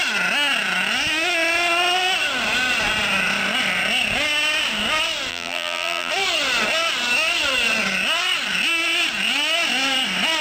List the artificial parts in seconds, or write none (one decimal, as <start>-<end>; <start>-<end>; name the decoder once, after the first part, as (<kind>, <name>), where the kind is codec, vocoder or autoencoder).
5.3-6.1 (vocoder, BigVGAN v2)